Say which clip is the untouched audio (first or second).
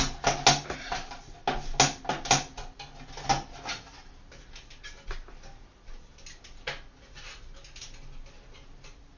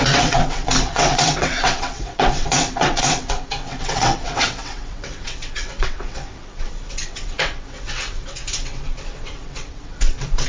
first